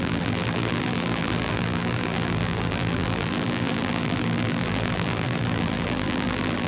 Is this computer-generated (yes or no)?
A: yes